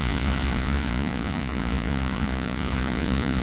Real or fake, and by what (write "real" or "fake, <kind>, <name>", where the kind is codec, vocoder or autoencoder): fake, vocoder, Vocos